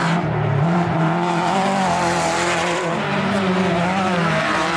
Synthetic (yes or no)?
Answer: yes